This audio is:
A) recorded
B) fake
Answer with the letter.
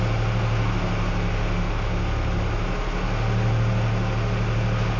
A